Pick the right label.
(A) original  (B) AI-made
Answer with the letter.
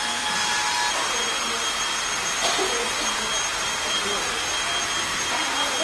A